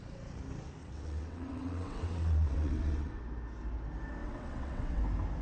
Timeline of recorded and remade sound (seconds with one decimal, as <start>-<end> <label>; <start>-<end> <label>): 0.0-0.8 recorded; 0.8-3.2 remade; 3.2-4.2 recorded; 4.2-5.0 remade; 5.0-5.4 recorded